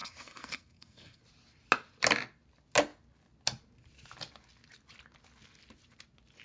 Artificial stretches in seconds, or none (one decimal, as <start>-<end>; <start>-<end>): 0.0-1.2